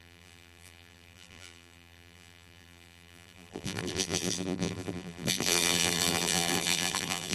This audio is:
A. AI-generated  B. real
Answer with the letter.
A